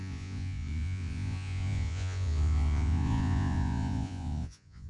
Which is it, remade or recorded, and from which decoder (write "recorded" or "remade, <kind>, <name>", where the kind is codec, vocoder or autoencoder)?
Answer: remade, vocoder, Vocos